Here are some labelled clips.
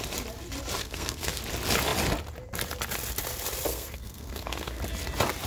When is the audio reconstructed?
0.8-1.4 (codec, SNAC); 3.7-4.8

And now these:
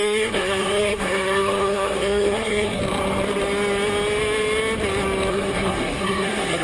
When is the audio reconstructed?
0.0-2.8 (codec, SNAC); 5.3-6.6